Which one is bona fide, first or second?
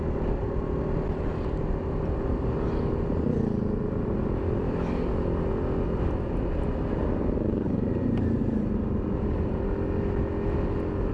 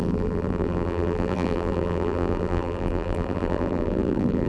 first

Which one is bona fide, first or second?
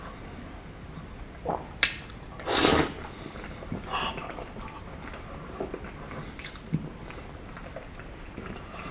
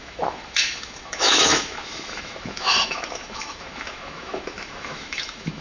first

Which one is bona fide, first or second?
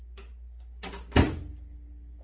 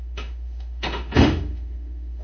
first